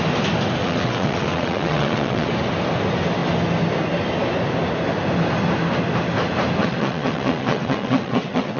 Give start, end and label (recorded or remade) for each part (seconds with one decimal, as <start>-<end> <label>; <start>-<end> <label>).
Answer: 0.0-0.6 recorded; 0.6-2.3 remade; 2.3-6.6 recorded; 6.6-8.6 remade